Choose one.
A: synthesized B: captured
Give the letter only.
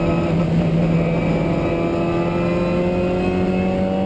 B